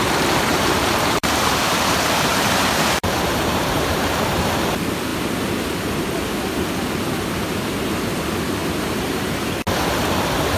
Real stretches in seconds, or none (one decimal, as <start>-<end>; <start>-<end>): 0.0-0.5; 4.3-8.6; 9.5-10.6